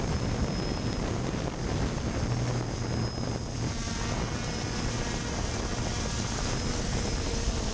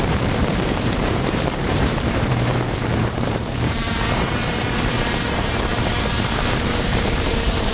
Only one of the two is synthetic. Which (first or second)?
second